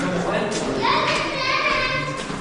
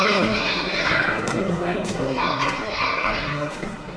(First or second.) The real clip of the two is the first